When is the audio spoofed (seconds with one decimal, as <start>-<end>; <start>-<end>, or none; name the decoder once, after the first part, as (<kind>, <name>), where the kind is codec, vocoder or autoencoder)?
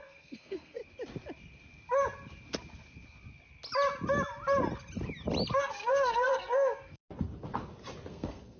0.0-0.8 (codec, SNAC); 5.6-7.0; 8.1-8.6